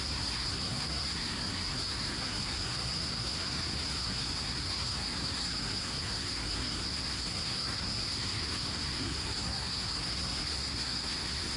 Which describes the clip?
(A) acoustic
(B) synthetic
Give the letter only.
B